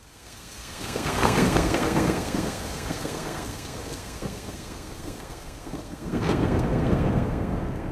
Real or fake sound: fake